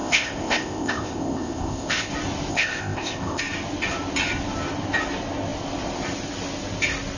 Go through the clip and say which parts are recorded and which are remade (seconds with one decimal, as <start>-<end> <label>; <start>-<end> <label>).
0.0-2.1 remade; 2.1-2.5 recorded; 2.5-3.4 remade; 3.4-7.2 recorded